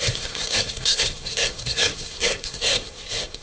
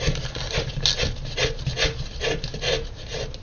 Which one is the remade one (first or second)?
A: first